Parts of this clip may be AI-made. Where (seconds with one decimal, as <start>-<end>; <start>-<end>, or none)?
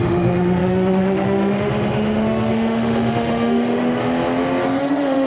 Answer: 0.0-4.0; 4.8-5.3